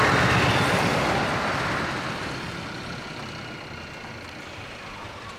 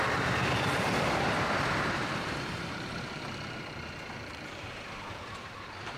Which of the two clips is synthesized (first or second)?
second